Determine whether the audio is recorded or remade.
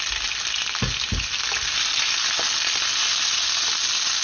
recorded